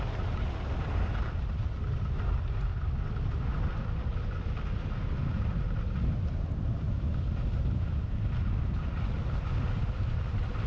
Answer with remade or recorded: recorded